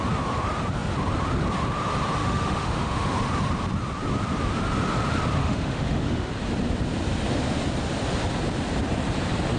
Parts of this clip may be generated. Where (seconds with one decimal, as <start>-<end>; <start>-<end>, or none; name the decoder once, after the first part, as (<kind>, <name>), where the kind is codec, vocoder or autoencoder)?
2.2-3.1 (autoencoder, DAC-VAE); 5.4-6.3